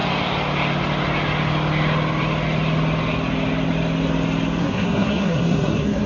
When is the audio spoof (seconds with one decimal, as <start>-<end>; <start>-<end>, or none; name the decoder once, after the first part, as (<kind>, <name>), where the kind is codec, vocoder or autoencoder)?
4.6-6.1 (codec, SNAC)